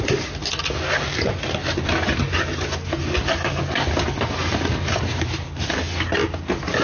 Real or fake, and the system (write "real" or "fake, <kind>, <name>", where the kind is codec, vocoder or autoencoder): real